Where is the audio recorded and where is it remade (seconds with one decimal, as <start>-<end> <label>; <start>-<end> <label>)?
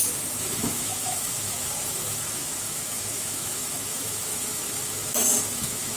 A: 0.0-6.0 remade